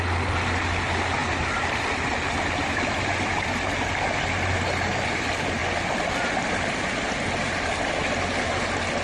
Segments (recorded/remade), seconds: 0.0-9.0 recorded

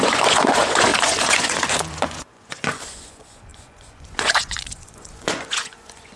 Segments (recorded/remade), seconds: 0.0-6.2 remade

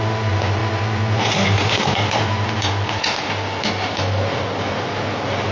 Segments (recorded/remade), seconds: 0.0-5.5 recorded

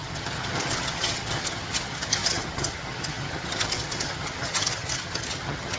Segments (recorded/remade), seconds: 0.0-5.8 remade

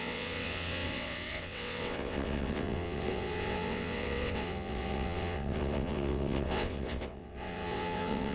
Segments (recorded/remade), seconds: 0.0-8.3 remade

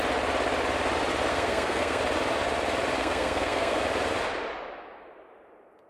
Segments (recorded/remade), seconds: 0.0-1.3 recorded; 1.3-2.0 remade; 2.0-3.0 recorded; 3.0-3.8 remade; 3.8-5.9 recorded

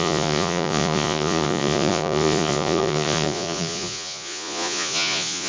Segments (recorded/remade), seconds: 0.0-5.5 remade

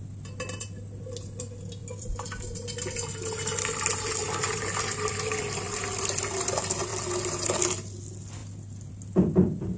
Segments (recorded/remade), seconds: 0.0-9.8 recorded